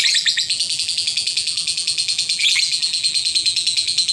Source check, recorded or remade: remade